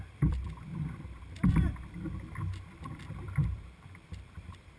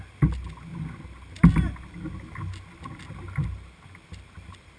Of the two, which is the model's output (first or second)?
first